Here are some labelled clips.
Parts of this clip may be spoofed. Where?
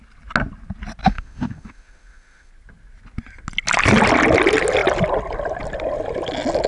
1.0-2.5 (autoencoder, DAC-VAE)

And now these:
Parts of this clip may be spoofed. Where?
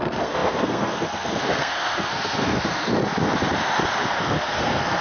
0.0-2.9 (codec, SNAC); 4.2-5.0